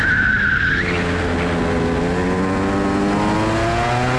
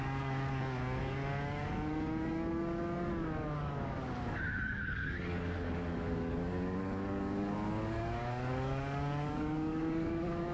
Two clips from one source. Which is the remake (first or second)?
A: second